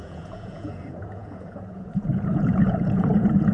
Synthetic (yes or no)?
yes